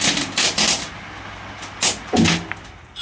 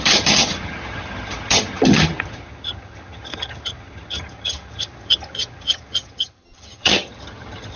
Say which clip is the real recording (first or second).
first